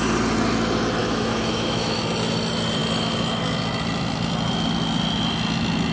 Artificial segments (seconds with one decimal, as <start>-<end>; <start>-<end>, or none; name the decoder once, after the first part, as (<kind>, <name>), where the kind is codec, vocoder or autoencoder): 1.0-2.0 (autoencoder, DAC-VAE)